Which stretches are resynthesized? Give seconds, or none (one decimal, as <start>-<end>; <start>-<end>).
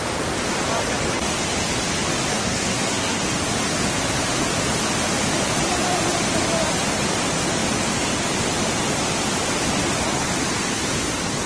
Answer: 2.3-3.2